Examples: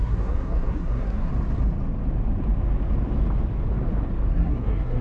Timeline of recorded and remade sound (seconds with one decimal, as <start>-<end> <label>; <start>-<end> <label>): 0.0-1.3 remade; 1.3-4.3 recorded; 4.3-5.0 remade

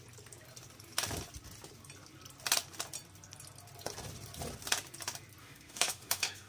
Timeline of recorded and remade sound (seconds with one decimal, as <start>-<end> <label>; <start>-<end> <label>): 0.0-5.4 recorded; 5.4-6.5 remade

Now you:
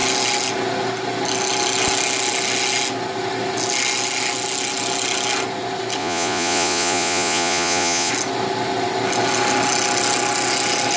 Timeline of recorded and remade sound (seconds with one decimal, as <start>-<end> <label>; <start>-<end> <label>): 0.0-6.0 recorded; 6.0-8.1 remade; 8.1-11.0 recorded

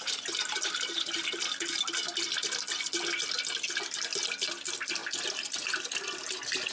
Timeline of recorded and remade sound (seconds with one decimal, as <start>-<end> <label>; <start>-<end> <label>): 0.0-6.7 recorded

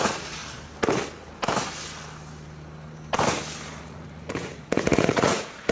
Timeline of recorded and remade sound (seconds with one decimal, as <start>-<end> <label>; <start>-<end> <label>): 0.0-0.4 remade; 0.4-3.8 recorded; 3.8-5.7 remade

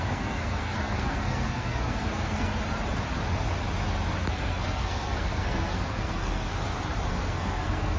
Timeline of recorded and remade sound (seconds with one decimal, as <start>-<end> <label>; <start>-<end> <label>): 0.0-2.5 remade; 2.5-4.3 recorded; 4.3-6.5 remade; 6.5-7.1 recorded; 7.1-8.0 remade